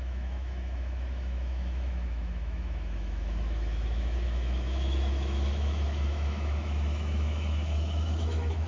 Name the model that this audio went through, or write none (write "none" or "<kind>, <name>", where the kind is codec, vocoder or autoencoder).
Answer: autoencoder, DAC-VAE